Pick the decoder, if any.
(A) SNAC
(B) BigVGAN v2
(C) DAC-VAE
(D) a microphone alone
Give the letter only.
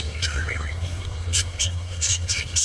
A